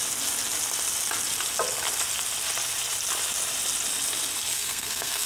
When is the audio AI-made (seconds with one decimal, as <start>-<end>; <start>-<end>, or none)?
4.5-5.3